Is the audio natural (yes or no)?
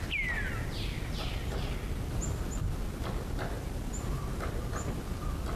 yes